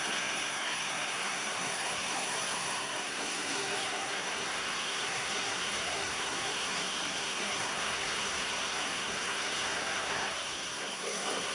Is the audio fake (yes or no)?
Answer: yes